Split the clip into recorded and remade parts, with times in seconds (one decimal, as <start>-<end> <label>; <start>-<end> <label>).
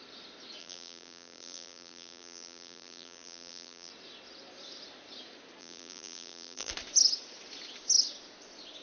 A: 0.0-0.6 recorded; 0.6-3.9 remade; 3.9-5.6 recorded; 5.6-6.7 remade; 6.7-8.8 recorded